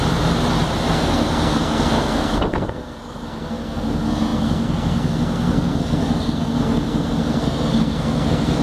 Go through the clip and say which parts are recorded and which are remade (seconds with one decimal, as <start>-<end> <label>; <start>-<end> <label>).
0.0-0.9 recorded; 0.9-8.6 remade